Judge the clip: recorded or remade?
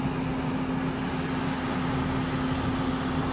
recorded